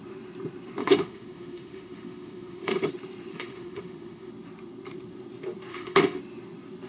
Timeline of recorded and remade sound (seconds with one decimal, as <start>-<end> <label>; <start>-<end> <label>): 0.0-0.8 recorded; 0.8-2.9 remade; 2.9-3.3 recorded; 3.3-4.3 remade; 4.3-5.7 recorded; 5.7-6.2 remade; 6.2-6.9 recorded